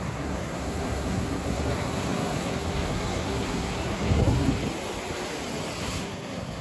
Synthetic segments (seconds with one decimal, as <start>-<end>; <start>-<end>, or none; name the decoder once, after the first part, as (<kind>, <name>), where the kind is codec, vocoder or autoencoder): 0.0-4.6 (codec, SNAC); 5.8-6.6

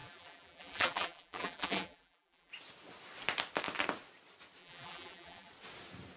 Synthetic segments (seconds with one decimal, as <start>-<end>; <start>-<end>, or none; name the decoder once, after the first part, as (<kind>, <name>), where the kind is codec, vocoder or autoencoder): 0.0-2.5 (vocoder, BigVGAN v2); 4.6-5.5

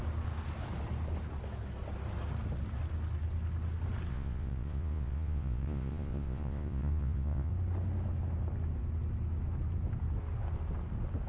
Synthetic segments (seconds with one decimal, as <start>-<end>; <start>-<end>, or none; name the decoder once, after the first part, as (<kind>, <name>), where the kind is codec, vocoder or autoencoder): 4.1-7.5 (vocoder, Vocos)

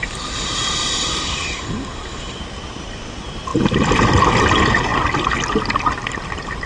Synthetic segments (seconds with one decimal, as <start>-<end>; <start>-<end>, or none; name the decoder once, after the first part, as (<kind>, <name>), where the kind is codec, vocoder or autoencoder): 0.0-1.6 (vocoder, BigVGAN v2)

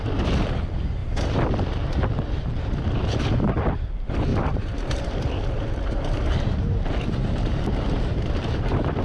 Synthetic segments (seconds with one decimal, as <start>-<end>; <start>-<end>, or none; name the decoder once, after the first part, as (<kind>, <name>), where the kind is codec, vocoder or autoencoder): 4.3-9.0 (vocoder, BigVGAN v2)

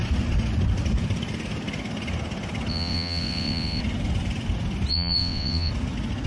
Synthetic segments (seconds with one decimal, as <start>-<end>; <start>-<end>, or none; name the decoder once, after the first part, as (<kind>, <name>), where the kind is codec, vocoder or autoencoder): 2.7-3.8 (vocoder, WaveNeXt); 4.9-5.7

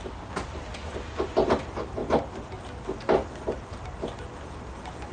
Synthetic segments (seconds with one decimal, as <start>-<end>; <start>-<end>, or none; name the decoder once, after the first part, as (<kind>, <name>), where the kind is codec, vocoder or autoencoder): none

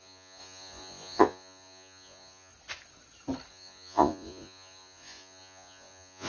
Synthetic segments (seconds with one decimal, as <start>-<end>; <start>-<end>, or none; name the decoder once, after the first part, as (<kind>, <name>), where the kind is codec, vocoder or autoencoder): 0.0-2.5 (vocoder, Vocos); 3.5-6.3